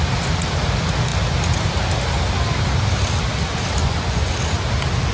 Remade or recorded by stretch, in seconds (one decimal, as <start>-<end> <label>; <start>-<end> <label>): 0.0-3.8 recorded; 3.8-4.3 remade; 4.3-5.1 recorded